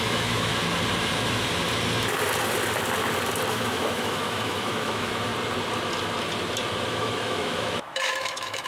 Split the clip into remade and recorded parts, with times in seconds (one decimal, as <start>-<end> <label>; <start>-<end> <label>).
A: 0.0-0.5 remade; 0.5-3.5 recorded; 3.5-5.3 remade; 5.3-6.9 recorded; 6.9-8.7 remade